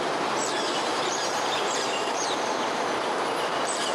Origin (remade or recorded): remade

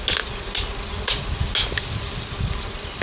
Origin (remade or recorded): recorded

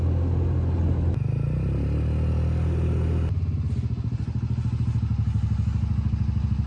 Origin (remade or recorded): recorded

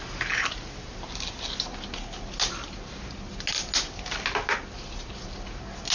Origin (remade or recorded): recorded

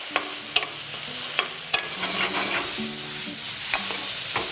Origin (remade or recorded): recorded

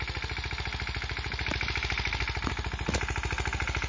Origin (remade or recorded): recorded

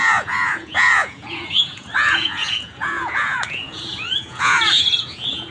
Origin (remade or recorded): remade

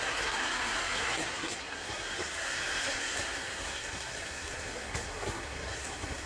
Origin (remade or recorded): remade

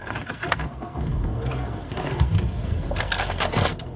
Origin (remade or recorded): remade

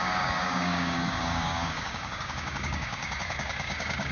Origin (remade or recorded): remade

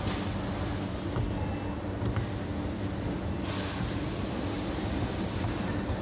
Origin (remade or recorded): recorded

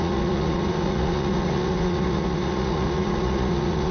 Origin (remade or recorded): remade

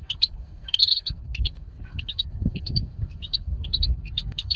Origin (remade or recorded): remade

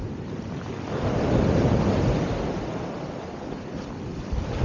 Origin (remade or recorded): recorded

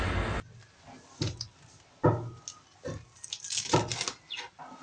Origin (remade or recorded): recorded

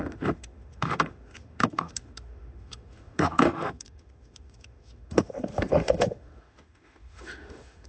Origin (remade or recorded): remade